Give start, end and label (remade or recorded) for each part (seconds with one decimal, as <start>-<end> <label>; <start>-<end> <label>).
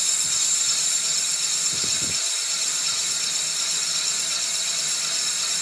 0.0-5.6 recorded